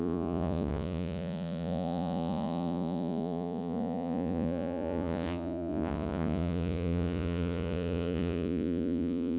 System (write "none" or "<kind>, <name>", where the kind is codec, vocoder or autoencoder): vocoder, Vocos